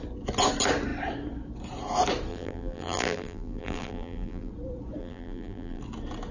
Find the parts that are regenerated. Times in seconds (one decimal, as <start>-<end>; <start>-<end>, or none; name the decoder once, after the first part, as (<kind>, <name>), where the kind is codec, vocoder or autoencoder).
2.3-4.5 (vocoder, BigVGAN v2); 5.0-5.8